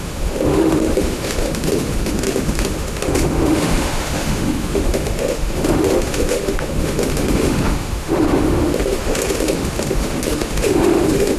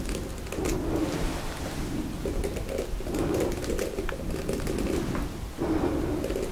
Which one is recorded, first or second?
second